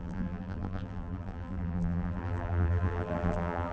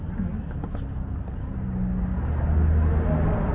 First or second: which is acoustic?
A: second